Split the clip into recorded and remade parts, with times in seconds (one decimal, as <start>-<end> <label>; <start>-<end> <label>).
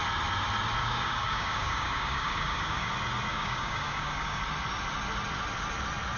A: 0.0-0.8 recorded; 0.8-2.9 remade; 2.9-3.3 recorded; 3.3-4.4 remade; 4.4-6.2 recorded